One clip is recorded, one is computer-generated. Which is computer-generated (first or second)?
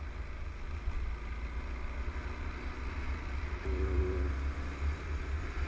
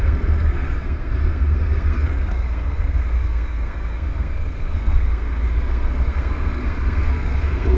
second